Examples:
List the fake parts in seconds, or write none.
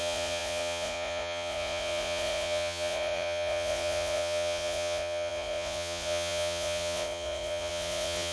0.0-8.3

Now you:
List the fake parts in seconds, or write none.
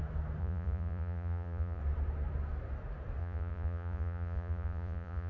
0.4-1.8; 3.2-5.3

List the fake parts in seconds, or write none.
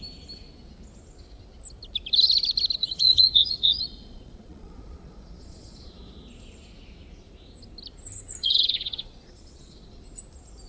2.8-5.9; 8.4-10.0